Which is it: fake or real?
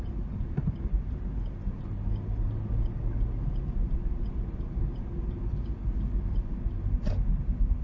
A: real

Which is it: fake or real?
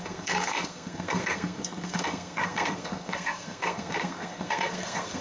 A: fake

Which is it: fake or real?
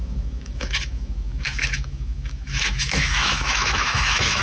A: fake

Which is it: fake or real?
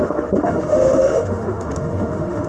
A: fake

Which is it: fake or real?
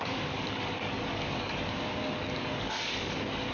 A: fake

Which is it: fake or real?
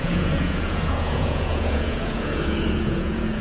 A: fake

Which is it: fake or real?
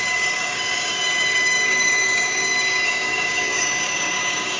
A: fake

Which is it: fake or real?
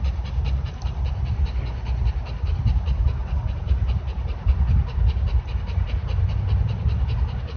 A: real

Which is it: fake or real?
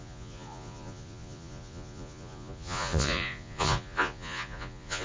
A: fake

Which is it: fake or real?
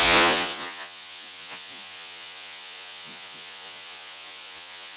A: fake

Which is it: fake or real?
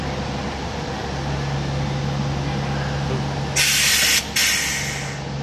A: real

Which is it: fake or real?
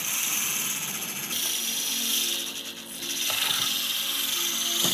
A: real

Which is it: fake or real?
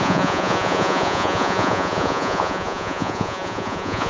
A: fake